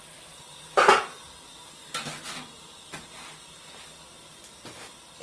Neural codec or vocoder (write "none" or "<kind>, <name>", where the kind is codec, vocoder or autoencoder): none